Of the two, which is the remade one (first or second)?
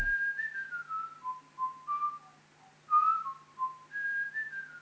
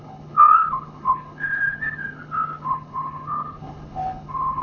second